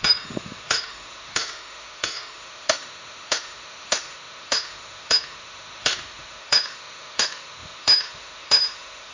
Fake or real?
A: fake